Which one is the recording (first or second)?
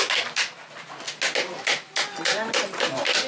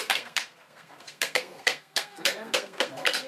first